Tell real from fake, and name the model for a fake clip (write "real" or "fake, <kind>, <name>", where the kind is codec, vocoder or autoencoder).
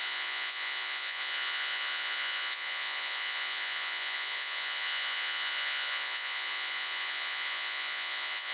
fake, vocoder, Vocos